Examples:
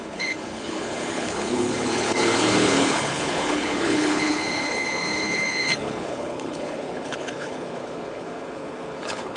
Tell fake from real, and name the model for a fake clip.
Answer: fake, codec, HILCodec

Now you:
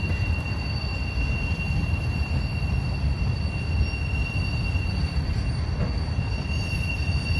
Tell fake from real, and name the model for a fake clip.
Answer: real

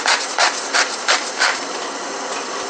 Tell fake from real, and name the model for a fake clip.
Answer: real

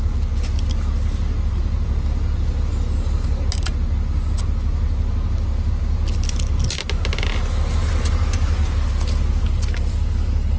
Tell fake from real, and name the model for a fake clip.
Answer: real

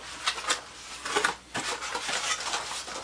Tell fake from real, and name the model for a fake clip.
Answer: real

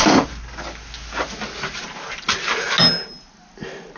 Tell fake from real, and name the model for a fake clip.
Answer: real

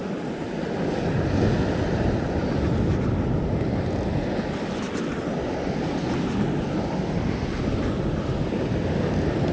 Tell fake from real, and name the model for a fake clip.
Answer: real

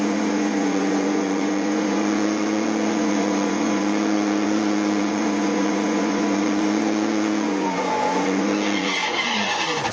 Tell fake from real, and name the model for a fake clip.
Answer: fake, vocoder, Vocos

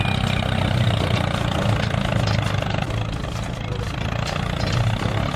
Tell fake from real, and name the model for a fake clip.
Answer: real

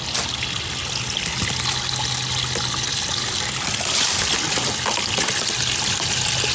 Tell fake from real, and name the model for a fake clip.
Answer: real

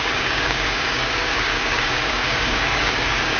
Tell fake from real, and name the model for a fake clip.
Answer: fake, codec, DAC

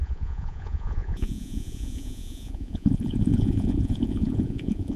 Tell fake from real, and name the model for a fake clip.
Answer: fake, vocoder, Vocos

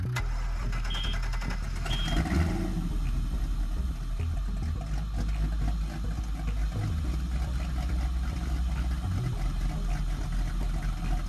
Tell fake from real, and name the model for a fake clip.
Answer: real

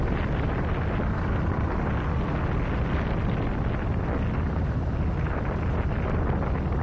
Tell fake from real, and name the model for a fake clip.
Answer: real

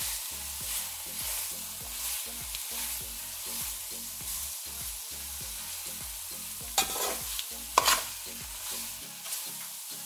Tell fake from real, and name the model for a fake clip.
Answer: real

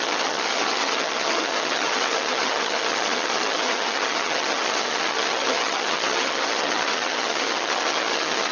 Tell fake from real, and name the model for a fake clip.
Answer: fake, vocoder, HiFi-GAN